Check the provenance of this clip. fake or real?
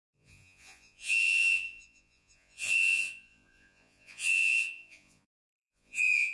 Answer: fake